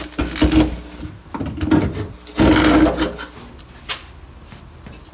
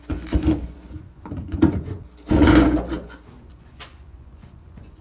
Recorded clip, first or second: first